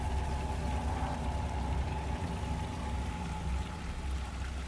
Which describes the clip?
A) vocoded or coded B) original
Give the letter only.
B